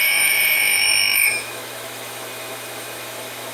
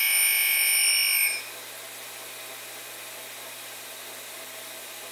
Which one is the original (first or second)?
second